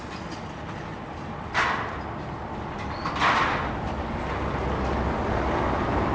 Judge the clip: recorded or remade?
recorded